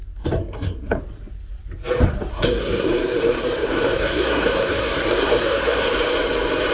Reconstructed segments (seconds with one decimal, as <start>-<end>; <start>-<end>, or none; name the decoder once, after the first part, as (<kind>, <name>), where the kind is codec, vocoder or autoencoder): 0.4-1.0 (codec, SNAC); 2.3-5.9